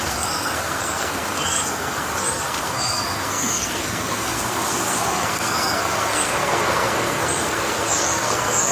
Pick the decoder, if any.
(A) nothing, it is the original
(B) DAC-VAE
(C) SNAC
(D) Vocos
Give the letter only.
C